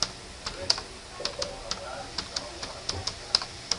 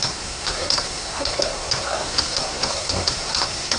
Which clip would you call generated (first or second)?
second